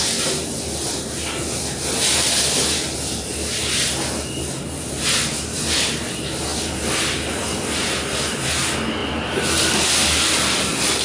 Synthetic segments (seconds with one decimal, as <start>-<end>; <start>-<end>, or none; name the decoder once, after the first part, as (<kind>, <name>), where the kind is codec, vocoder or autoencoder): none